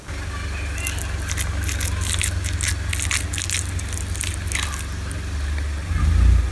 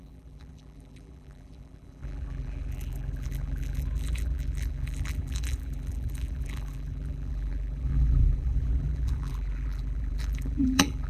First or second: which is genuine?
first